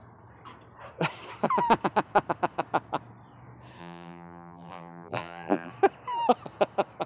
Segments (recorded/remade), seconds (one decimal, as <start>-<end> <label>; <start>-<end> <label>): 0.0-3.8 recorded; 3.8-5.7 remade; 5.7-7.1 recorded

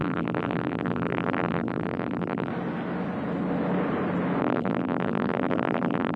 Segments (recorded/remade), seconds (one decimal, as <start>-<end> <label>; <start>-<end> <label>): 0.0-2.5 remade; 2.5-4.4 recorded; 4.4-6.2 remade

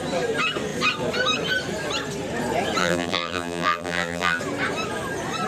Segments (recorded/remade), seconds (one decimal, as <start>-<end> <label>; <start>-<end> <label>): 0.0-2.8 recorded; 2.8-4.4 remade; 4.4-5.5 recorded

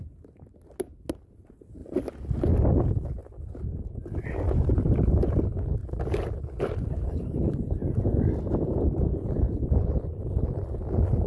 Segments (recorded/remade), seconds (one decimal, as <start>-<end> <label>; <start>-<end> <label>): 0.0-11.3 recorded

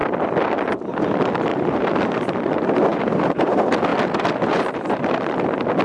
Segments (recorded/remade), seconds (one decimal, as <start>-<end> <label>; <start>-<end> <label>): 0.0-1.5 recorded; 1.5-2.2 remade; 2.2-2.9 recorded; 2.9-3.5 remade; 3.5-3.9 recorded; 3.9-5.2 remade; 5.2-5.8 recorded

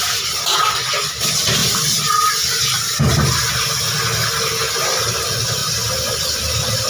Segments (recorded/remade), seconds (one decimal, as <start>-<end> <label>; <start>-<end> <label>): 0.0-1.6 remade; 1.6-5.1 recorded; 5.1-5.6 remade; 5.6-6.4 recorded; 6.4-6.9 remade